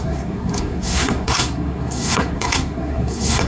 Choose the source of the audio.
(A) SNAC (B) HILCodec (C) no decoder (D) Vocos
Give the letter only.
A